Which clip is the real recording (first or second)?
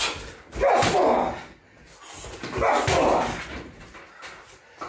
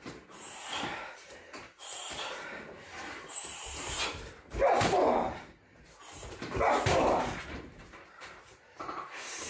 first